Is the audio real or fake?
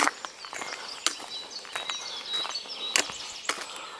real